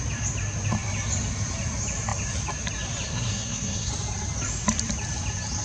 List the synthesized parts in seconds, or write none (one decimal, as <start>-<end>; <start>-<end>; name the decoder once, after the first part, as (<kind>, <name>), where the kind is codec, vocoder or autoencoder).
3.1-3.9 (codec, SNAC)